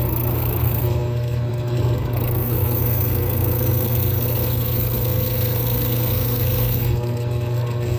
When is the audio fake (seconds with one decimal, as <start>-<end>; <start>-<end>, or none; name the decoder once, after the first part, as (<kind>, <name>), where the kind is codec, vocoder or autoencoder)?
0.0-8.0 (codec, SNAC)